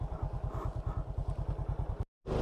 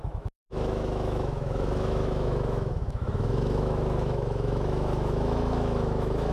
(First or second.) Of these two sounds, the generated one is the second